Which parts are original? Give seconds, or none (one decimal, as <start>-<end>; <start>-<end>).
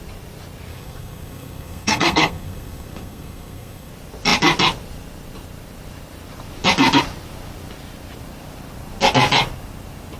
0.0-0.7; 3.9-10.2